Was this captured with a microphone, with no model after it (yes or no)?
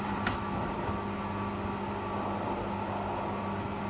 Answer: yes